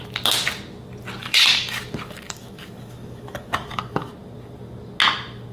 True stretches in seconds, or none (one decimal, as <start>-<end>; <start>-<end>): 0.0-1.2; 4.1-5.5